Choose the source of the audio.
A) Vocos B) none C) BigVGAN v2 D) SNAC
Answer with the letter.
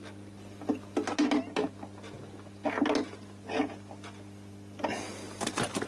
B